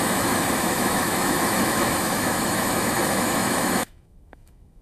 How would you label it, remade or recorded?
remade